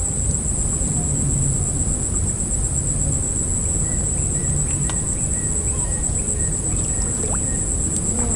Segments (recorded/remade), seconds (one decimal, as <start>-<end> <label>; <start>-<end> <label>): 0.0-8.4 recorded